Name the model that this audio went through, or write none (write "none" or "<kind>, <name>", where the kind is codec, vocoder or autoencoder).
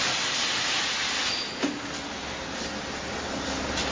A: none